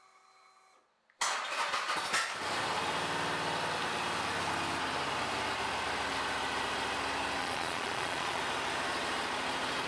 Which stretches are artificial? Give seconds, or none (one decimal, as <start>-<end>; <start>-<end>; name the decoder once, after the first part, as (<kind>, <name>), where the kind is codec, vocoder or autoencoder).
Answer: 7.4-8.4 (vocoder, Vocos)